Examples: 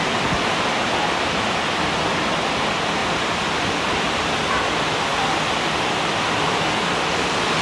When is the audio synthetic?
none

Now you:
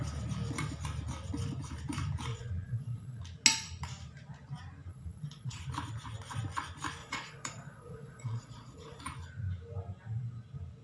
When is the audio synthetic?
2.3-3.2 (vocoder, Vocos); 4.9-5.6; 7.0-9.0

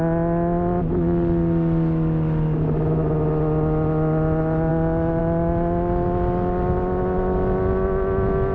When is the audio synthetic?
none

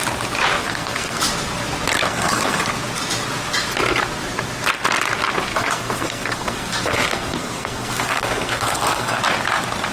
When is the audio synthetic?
0.6-1.2 (codec, SNAC); 2.0-2.6; 5.5-9.2

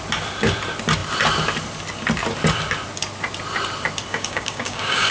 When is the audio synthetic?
4.1-5.1 (codec, DAC)